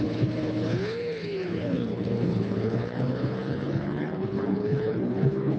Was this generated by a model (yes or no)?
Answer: yes